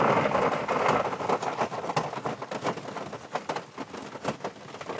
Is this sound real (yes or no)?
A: yes